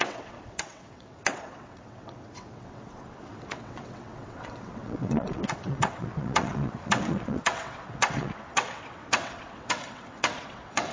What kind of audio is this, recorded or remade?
remade